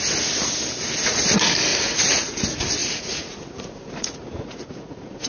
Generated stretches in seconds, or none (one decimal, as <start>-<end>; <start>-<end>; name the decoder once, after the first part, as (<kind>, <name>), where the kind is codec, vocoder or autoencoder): 1.7-2.4 (vocoder, Vocos); 2.8-5.3